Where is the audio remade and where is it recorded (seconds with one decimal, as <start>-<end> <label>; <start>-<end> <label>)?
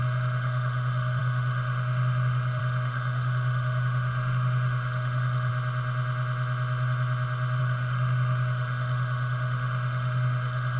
0.0-5.5 remade; 5.5-7.6 recorded; 7.6-10.8 remade